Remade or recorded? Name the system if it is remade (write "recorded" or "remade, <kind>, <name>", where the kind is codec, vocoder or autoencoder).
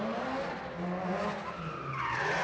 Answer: recorded